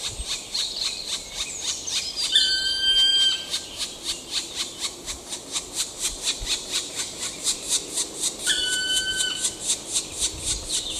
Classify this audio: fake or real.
real